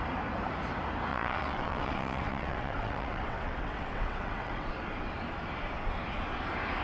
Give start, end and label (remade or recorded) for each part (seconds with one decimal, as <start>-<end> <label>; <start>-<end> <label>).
0.0-1.1 recorded; 1.1-4.7 remade; 4.7-6.8 recorded